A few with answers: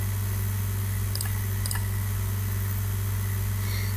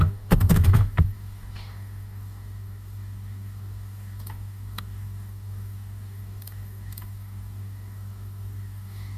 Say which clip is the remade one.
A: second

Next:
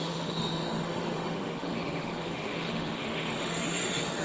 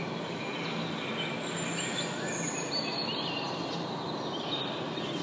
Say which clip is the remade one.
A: first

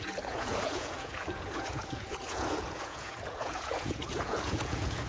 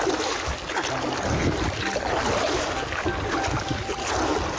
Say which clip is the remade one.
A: first